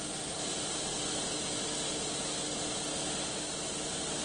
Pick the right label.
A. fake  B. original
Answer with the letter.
B